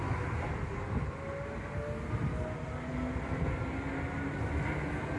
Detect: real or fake real